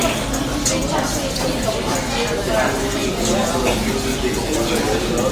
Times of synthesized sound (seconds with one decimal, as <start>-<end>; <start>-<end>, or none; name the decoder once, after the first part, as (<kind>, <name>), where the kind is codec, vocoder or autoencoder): 3.0-3.5 (vocoder, Vocos); 4.1-4.8